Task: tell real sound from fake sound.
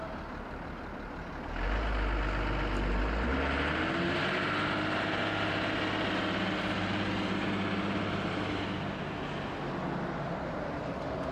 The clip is real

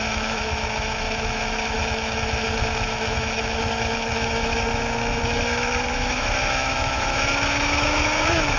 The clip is fake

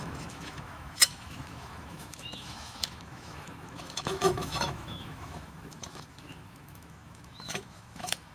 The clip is fake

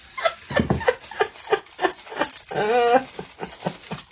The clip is real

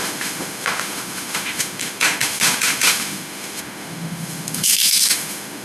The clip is fake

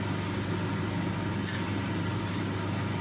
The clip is real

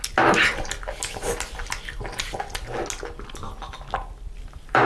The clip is real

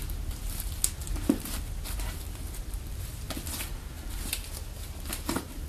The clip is real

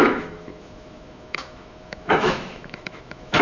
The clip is fake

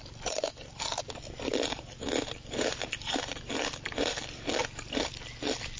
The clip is real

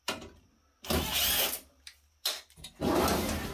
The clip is real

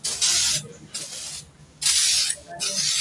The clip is real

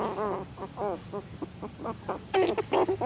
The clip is real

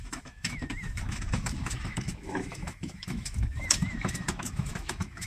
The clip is fake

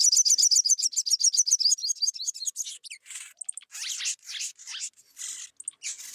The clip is real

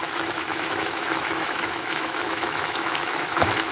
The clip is fake